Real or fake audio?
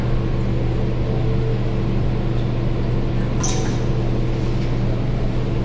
real